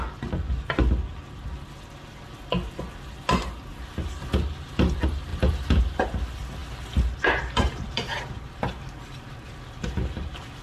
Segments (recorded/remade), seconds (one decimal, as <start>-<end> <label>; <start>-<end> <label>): 0.0-10.6 recorded